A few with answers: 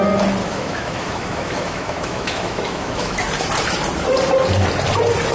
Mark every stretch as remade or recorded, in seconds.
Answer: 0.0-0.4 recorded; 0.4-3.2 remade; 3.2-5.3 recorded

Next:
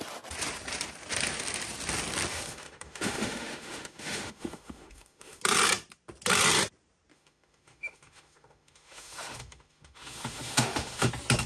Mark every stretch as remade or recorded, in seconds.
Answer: 0.0-2.3 recorded; 2.3-5.4 remade; 5.4-7.1 recorded; 7.1-11.1 remade; 11.1-11.5 recorded

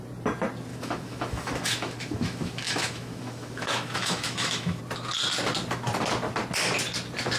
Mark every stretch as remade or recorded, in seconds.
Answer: 0.0-0.7 recorded; 0.7-4.8 remade; 4.8-7.4 recorded